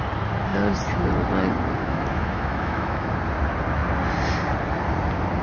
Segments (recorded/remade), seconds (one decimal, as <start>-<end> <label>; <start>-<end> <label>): 0.0-1.8 recorded; 1.8-3.1 remade; 3.1-5.4 recorded